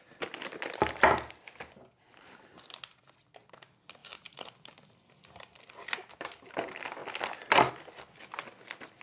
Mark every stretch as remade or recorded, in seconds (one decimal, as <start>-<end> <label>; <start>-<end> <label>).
0.0-9.0 recorded